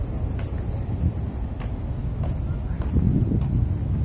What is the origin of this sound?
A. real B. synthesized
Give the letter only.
A